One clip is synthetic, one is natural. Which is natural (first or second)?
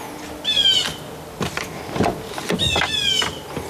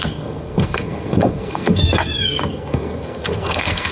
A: first